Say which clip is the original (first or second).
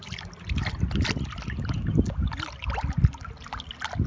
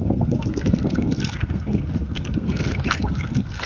first